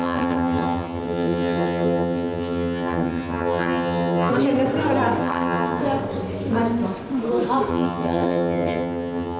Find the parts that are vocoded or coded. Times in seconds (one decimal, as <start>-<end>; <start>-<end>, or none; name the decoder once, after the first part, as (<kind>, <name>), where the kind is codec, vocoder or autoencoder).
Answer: 0.0-4.3 (vocoder, HiFi-GAN); 5.2-5.8; 7.7-9.4

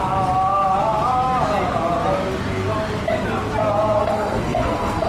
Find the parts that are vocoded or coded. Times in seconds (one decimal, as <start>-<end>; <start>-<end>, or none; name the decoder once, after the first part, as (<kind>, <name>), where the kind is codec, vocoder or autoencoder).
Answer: 4.0-5.1 (codec, SNAC)

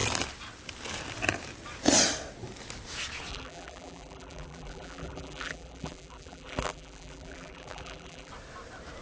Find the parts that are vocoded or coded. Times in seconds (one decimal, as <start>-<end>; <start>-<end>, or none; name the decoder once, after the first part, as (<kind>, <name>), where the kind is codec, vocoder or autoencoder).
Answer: 3.3-8.3 (vocoder, BigVGAN v2)

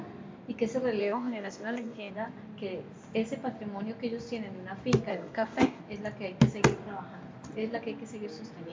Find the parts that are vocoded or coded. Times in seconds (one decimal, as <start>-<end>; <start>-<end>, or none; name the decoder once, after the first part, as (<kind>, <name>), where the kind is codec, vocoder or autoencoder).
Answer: 1.0-2.1 (codec, ZipCodec); 5.1-5.8

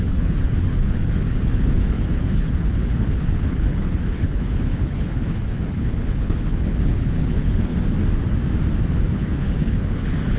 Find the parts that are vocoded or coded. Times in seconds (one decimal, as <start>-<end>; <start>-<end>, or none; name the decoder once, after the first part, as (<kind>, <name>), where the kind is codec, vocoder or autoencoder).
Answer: 0.0-7.7 (codec, HILCodec); 8.9-10.4

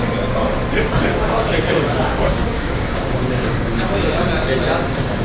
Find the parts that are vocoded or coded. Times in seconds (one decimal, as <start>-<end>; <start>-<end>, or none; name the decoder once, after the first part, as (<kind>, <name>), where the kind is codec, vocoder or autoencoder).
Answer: 1.1-4.2 (codec, DAC)

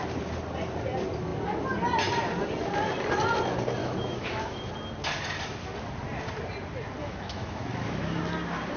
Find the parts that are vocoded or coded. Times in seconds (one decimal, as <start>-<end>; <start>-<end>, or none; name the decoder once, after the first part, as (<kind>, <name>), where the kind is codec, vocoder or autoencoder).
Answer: 3.8-4.7 (autoencoder, DAC-VAE); 7.0-8.2

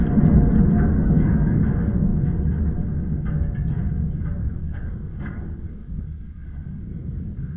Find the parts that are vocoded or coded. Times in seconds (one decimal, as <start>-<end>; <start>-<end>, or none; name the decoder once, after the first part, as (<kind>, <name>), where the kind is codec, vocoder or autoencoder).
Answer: 0.9-1.6 (codec, SNAC); 4.4-7.6